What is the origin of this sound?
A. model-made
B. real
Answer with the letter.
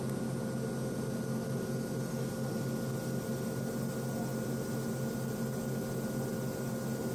B